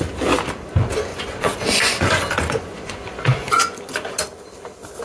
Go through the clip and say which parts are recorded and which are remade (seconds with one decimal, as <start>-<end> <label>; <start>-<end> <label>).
0.0-1.1 recorded; 1.1-4.1 remade; 4.1-5.0 recorded